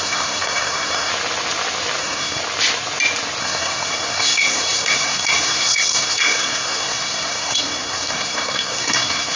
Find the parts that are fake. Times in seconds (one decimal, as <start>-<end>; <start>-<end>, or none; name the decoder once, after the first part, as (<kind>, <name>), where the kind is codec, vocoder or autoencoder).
0.0-1.1 (codec, SNAC); 2.0-2.4; 3.4-9.4